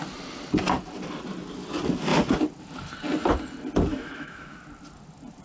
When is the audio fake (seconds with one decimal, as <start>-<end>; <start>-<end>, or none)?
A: 3.9-4.6